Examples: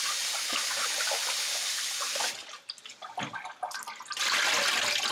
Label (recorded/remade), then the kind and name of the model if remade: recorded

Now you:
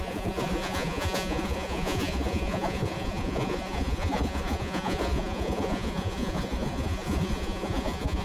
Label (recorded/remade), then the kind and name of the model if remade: remade, vocoder, Vocos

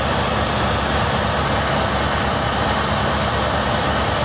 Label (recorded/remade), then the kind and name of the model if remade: recorded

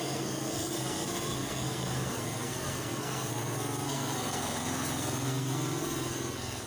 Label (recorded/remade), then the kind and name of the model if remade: remade, codec, SNAC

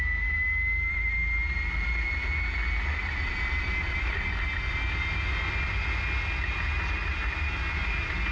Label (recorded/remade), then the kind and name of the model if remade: recorded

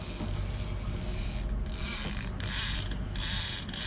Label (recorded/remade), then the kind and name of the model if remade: recorded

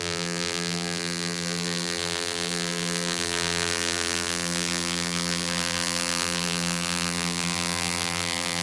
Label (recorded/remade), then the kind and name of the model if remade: remade, vocoder, BigVGAN v2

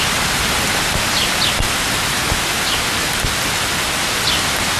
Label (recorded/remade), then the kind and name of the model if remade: recorded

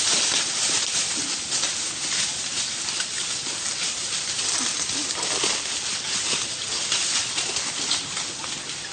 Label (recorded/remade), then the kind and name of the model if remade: recorded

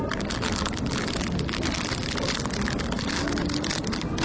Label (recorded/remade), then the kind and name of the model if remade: recorded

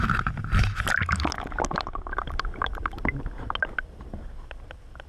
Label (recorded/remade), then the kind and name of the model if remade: recorded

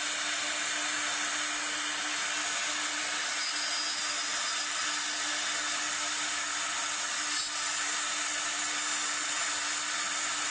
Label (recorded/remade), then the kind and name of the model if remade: recorded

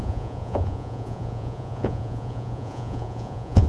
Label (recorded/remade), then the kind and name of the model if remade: remade, vocoder, Vocos